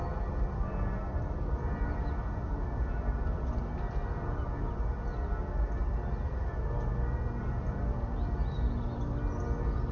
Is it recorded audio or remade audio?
recorded